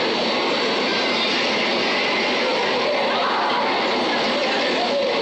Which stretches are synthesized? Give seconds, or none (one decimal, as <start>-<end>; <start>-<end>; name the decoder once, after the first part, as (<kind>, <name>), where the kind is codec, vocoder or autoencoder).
2.5-3.2 (vocoder, BigVGAN v2); 4.4-5.2